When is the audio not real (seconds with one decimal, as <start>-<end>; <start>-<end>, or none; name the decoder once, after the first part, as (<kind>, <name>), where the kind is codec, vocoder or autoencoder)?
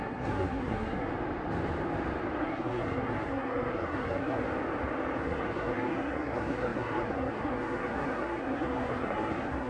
0.0-1.1 (codec, SNAC); 2.4-4.4; 5.2-9.7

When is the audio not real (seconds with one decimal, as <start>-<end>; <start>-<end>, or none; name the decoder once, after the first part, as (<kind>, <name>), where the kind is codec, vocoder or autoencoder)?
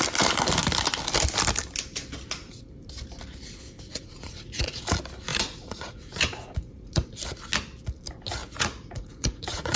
3.9-4.8 (vocoder, Vocos); 5.3-7.1; 8.4-9.8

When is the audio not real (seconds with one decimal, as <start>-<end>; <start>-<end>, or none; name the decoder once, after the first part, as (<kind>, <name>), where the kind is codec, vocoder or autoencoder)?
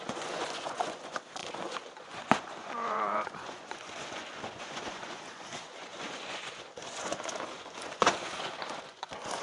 0.0-9.4 (vocoder, Vocos)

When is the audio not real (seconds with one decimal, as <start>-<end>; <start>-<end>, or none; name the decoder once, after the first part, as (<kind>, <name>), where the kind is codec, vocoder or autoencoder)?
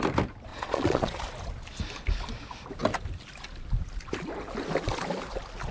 0.5-1.2 (vocoder, Vocos)